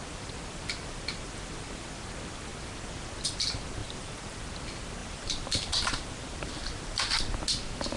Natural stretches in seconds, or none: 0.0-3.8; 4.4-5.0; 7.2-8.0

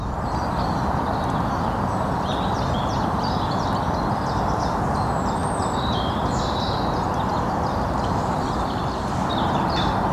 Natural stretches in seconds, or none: 0.0-10.1